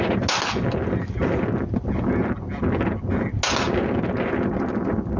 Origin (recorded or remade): recorded